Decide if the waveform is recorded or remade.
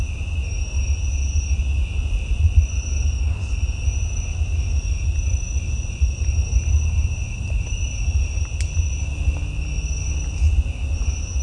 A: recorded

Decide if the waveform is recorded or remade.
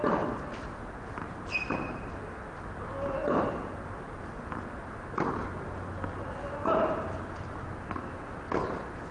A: recorded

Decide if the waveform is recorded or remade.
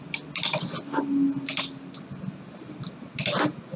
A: recorded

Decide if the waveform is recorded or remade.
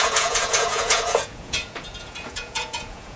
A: remade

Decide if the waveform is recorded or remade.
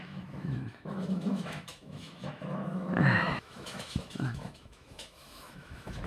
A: remade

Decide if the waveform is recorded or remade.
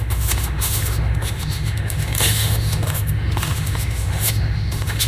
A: remade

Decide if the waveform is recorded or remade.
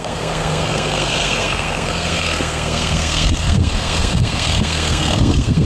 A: remade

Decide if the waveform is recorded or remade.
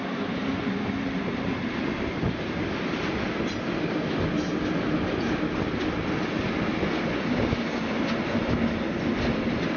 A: recorded